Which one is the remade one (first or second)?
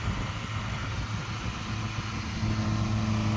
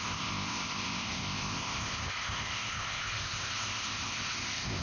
second